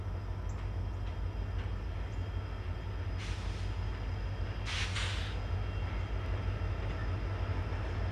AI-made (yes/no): no